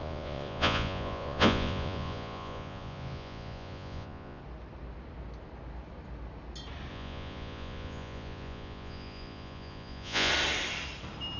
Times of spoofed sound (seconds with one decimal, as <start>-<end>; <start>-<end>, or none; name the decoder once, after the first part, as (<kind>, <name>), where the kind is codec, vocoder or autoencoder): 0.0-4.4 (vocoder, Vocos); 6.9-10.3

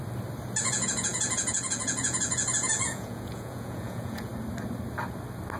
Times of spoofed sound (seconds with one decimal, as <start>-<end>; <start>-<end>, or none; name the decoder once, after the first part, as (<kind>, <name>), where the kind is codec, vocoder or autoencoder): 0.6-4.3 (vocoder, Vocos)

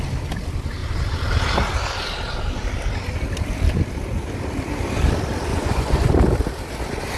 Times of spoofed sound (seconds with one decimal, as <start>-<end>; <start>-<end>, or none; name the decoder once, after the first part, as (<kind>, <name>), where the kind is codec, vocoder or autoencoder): 5.5-6.1 (vocoder, Vocos)

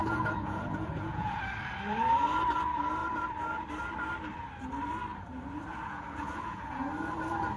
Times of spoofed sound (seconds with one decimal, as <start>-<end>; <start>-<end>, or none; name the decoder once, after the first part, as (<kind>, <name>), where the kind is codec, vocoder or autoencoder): 0.0-1.4 (vocoder, Vocos); 5.7-6.9

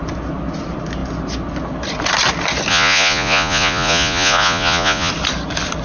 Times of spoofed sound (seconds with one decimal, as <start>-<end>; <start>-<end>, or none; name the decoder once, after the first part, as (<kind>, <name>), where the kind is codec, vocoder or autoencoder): 2.7-5.1 (vocoder, Vocos)

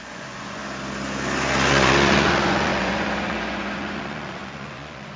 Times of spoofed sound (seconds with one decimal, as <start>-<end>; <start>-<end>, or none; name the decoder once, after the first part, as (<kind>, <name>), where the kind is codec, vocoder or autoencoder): 0.0-0.6 (vocoder, Vocos); 1.7-5.2

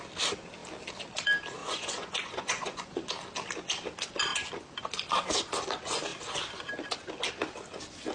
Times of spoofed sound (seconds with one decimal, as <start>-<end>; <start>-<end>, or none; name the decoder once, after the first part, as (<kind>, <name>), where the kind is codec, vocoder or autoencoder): 1.6-3.1 (vocoder, Vocos)